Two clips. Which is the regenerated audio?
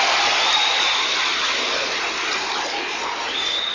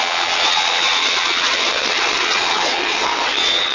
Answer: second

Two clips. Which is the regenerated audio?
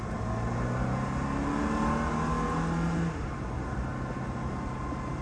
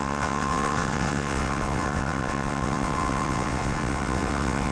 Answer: second